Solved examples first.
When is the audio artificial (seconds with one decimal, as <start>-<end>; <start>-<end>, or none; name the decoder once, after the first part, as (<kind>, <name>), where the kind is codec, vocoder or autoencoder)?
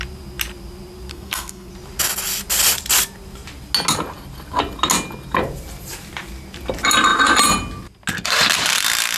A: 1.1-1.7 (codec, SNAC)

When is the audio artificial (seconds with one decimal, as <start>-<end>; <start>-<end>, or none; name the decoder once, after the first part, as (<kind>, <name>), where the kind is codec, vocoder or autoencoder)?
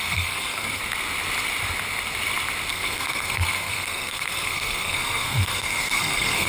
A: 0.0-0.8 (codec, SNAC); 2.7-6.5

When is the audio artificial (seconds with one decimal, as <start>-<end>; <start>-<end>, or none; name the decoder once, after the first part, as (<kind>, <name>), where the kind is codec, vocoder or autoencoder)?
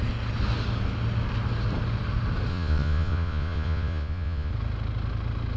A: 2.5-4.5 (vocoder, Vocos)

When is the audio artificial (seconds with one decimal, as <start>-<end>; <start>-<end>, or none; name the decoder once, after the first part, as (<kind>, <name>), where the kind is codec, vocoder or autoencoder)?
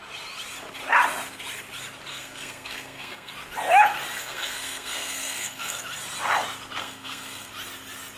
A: 2.1-3.3 (codec, SNAC); 4.2-5.8; 6.8-7.5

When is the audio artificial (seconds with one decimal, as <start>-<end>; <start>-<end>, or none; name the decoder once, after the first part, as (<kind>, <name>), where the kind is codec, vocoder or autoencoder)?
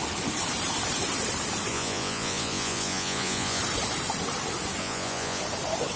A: 1.7-3.6 (vocoder, Vocos); 4.8-5.4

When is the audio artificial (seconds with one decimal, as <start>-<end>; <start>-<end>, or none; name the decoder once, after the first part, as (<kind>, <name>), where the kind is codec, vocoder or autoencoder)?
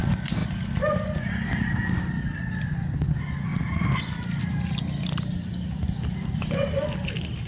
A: none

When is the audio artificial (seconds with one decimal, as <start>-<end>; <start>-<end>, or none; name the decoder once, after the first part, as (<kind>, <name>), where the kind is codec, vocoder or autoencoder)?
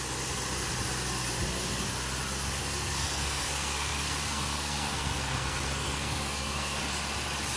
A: 2.6-6.8 (codec, SNAC)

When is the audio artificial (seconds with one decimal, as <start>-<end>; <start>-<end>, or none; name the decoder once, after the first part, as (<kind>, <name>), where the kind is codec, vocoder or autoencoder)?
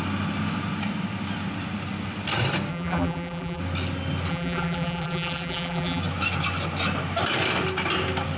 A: 2.7-3.6 (vocoder, BigVGAN v2); 4.3-6.0